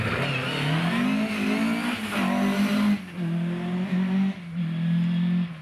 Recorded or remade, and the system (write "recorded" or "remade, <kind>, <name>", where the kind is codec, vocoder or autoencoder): recorded